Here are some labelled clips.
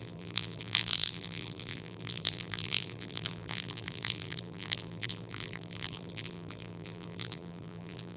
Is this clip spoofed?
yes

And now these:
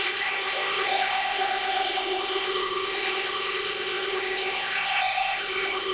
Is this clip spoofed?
yes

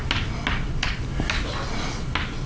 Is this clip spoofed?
no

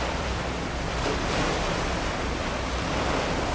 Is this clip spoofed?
no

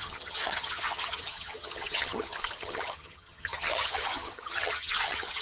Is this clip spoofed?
yes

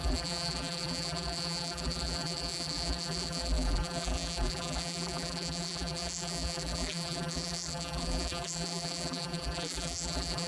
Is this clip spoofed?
yes